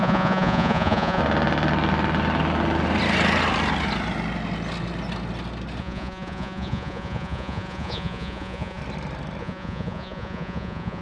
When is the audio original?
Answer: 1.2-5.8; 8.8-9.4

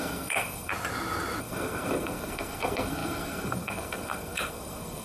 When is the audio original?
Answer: 0.7-1.4

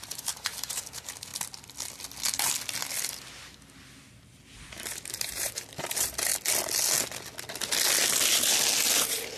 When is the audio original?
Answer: 1.3-4.0; 6.3-9.0

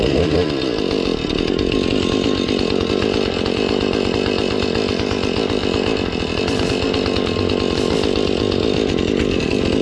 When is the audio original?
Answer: 0.0-9.8